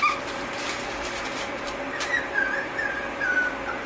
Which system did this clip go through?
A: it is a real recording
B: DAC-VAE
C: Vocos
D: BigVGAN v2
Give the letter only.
D